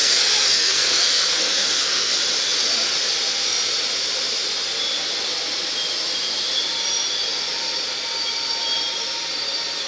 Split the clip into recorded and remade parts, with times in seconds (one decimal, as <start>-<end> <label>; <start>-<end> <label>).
0.0-2.1 remade; 2.1-9.9 recorded